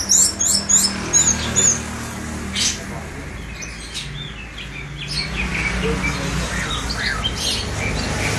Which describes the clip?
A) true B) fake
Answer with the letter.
A